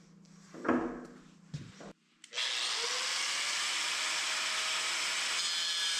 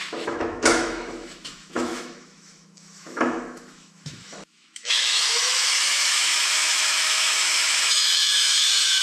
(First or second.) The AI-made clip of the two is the second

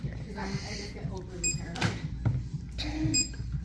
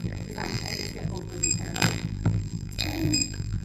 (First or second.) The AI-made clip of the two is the second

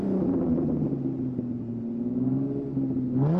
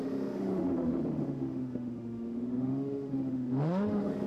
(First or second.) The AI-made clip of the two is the second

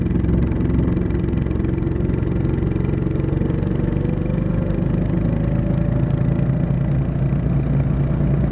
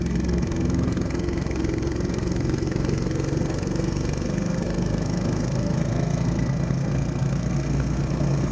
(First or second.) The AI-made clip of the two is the second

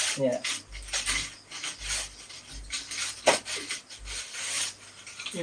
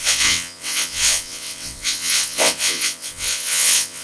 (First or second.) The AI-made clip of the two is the second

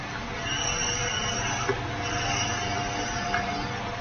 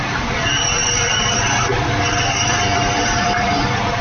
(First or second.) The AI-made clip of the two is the second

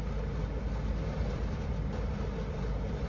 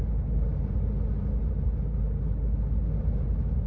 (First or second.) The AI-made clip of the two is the first